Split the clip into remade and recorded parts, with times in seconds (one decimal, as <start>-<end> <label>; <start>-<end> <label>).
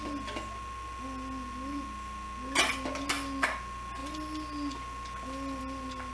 0.0-6.1 recorded